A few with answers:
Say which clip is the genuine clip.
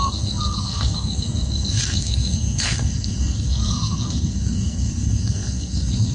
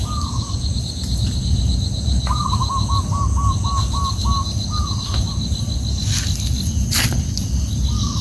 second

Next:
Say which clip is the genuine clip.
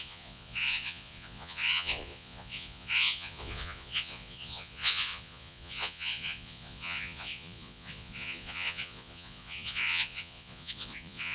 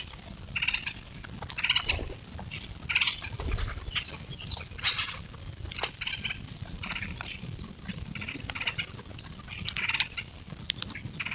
second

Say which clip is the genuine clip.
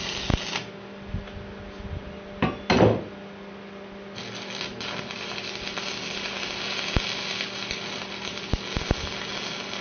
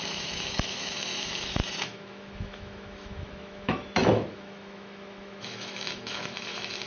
first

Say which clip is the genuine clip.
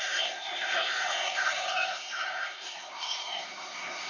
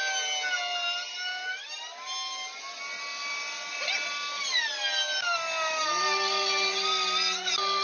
second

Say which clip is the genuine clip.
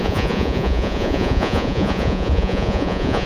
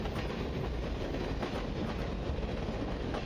second